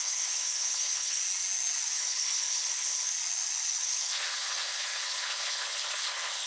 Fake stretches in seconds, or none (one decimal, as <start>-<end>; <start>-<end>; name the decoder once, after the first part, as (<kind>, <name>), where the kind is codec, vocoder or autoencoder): 0.0-1.2 (codec, HILCodec); 1.9-3.1; 3.8-6.5